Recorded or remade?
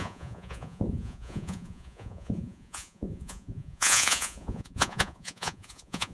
remade